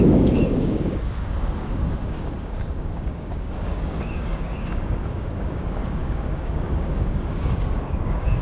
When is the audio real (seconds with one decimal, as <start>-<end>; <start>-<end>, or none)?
none